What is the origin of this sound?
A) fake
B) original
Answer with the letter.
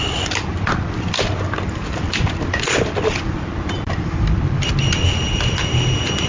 B